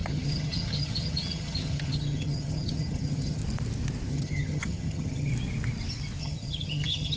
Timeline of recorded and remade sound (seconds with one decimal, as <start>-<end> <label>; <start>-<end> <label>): 0.0-3.4 remade; 3.4-4.1 recorded; 4.1-5.3 remade; 5.3-6.2 recorded; 6.2-7.2 remade